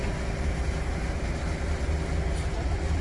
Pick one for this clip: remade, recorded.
recorded